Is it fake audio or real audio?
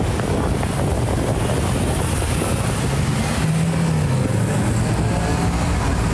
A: real